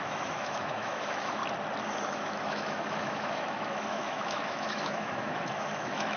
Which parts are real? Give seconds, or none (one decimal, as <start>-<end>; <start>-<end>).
1.4-2.1